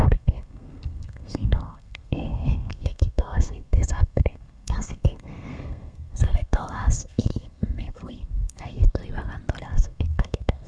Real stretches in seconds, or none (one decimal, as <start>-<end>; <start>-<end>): 9.0-9.6